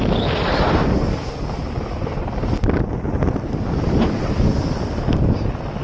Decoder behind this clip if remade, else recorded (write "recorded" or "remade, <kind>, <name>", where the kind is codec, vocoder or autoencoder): recorded